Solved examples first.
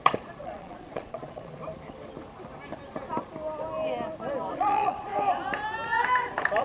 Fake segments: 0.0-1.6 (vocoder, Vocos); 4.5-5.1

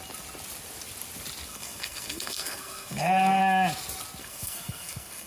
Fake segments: 1.5-3.4 (codec, SNAC); 4.2-5.3

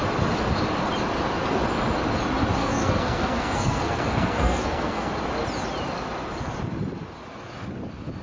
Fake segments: 2.6-5.1 (codec, SNAC)

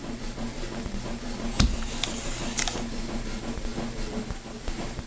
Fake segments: none

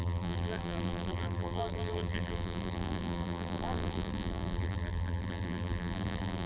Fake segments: 0.0-6.5 (vocoder, BigVGAN v2)

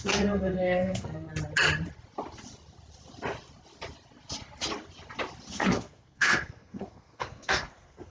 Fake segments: 0.0-1.3 (codec, SNAC); 5.5-8.1

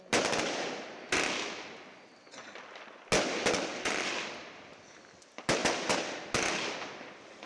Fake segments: 3.7-5.0 (vocoder, BigVGAN v2)

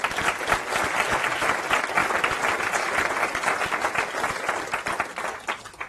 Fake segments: none